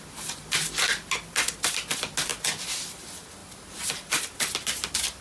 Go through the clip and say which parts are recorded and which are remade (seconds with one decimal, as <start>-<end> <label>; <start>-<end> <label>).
0.0-5.2 recorded